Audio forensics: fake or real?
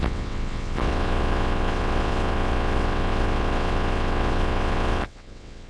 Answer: fake